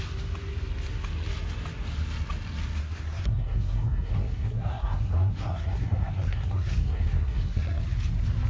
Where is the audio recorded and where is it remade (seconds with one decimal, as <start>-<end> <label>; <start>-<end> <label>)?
0.0-2.8 recorded; 2.8-7.8 remade; 7.8-8.5 recorded